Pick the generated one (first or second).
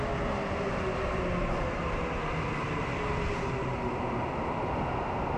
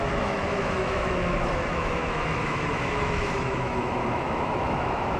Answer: second